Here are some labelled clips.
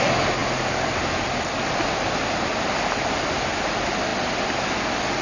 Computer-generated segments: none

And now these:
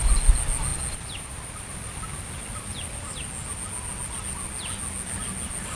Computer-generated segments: none

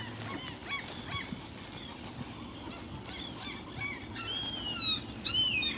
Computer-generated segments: none

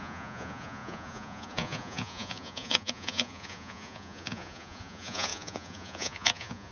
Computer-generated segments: 0.0-6.7 (vocoder, Vocos)